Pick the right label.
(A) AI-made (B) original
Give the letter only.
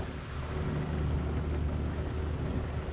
B